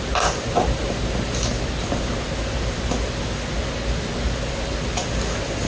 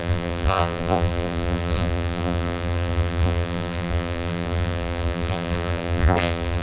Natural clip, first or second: first